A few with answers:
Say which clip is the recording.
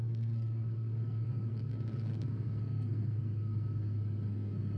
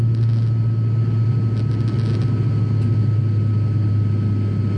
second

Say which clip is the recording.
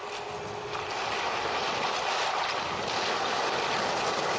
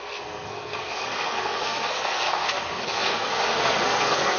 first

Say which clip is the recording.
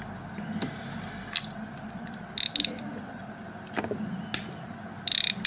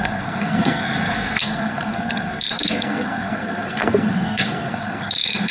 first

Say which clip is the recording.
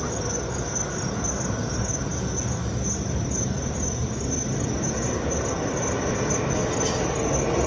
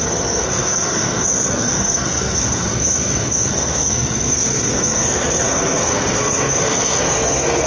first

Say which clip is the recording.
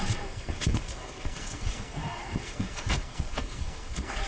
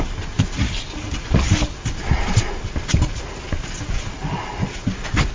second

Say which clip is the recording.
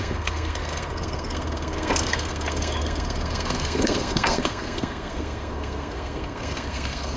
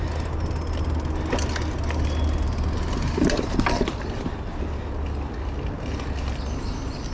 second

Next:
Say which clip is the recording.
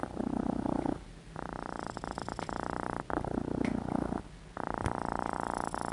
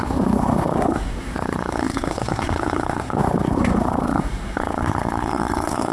first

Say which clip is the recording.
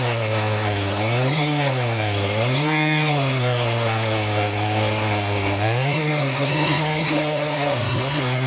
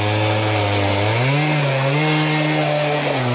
second